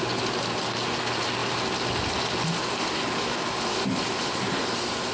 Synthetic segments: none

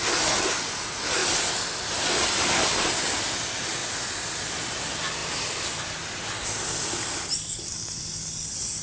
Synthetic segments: 1.2-3.2 (vocoder, BigVGAN v2); 3.8-4.4; 5.2-5.8

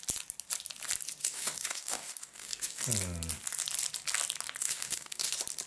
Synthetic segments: 1.2-2.8 (codec, DAC); 4.6-5.3